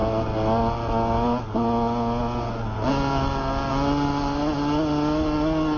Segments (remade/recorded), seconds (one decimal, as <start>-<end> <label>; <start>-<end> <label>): 0.0-5.8 recorded